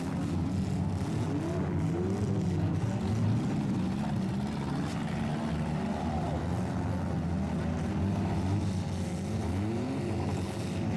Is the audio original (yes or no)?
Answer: yes